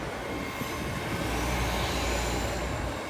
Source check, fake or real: real